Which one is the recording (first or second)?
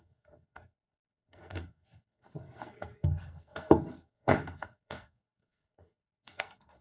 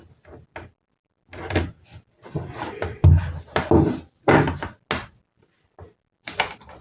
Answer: second